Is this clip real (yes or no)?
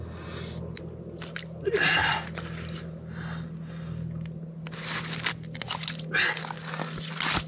yes